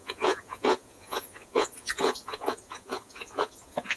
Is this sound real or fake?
fake